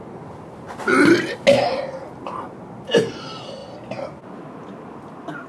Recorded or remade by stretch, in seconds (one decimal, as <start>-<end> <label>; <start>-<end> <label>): 0.0-5.5 recorded